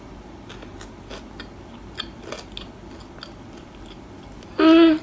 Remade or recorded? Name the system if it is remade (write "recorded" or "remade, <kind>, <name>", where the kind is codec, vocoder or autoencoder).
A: recorded